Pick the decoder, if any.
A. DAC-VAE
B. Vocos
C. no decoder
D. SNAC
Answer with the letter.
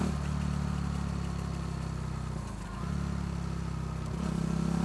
C